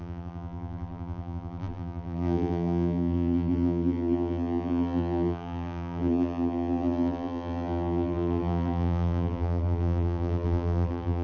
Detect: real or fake fake